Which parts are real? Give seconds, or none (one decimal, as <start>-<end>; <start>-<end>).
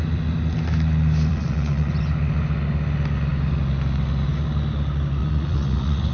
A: 0.0-1.3; 1.9-5.2